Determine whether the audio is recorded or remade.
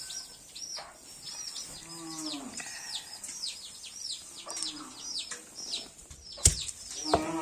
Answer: recorded